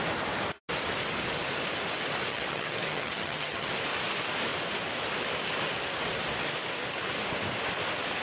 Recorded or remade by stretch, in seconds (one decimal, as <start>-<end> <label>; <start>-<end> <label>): 0.0-2.3 recorded; 2.3-3.7 remade; 3.7-8.2 recorded